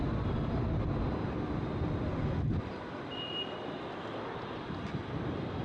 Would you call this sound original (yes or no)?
yes